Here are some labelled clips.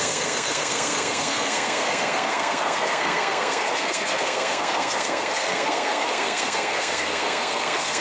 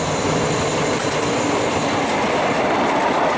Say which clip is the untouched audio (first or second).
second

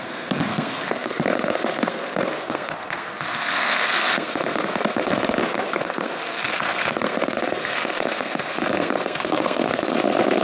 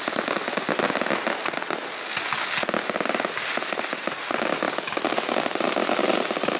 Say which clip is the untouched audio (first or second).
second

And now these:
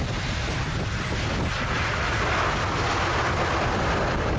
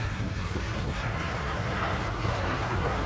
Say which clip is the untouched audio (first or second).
first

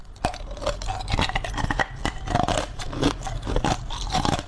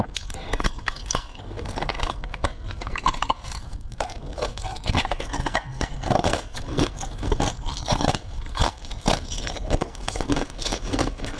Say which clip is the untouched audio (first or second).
first